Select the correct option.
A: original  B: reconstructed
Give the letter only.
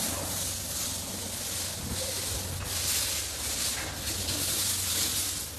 A